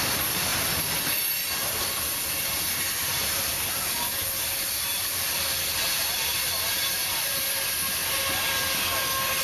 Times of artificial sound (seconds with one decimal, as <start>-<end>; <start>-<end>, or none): 3.0-7.5

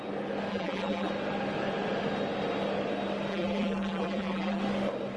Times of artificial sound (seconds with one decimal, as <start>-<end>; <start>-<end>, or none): 0.5-1.1; 3.3-4.6

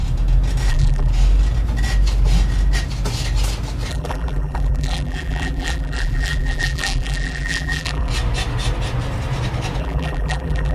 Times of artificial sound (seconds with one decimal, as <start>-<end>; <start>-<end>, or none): 0.7-1.1; 3.9-8.1; 9.8-10.7

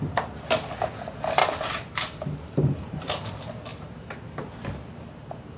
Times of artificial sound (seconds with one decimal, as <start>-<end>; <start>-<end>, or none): 1.4-2.4; 3.7-4.5

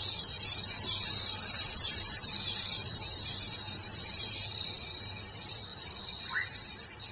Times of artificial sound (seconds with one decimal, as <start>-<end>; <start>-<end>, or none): 2.8-4.2; 5.7-6.2